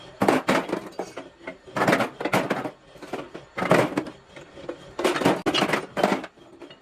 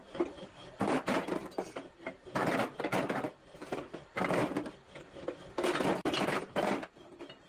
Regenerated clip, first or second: second